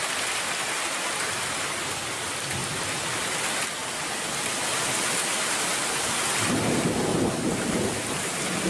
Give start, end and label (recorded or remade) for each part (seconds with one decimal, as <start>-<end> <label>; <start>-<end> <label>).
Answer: 0.0-2.6 recorded; 2.6-3.4 remade; 3.4-7.1 recorded; 7.1-8.7 remade